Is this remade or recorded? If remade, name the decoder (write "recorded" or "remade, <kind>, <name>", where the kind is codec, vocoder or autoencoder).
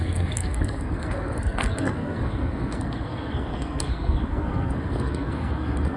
remade, codec, SNAC